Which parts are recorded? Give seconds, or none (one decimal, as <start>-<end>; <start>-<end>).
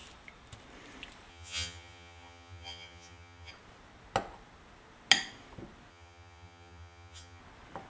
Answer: 0.0-1.3; 3.5-5.9; 7.4-7.9